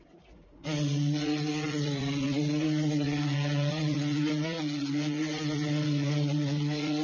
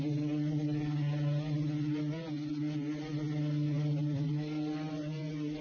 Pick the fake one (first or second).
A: first